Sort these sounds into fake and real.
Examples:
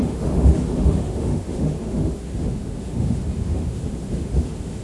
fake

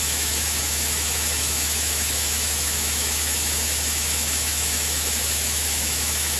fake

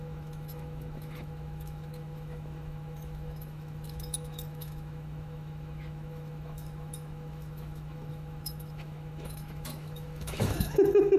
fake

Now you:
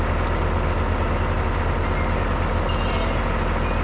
real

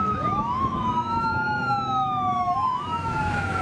fake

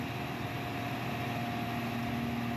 real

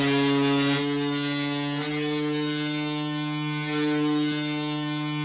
real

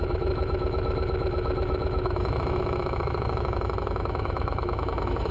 fake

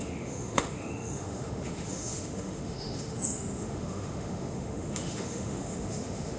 fake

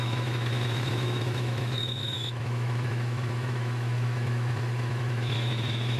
fake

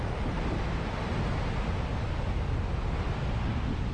real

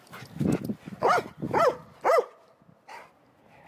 real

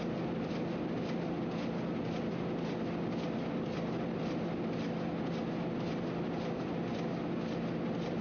real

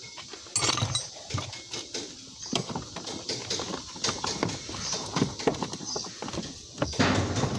real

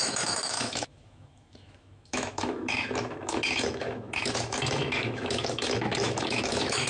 fake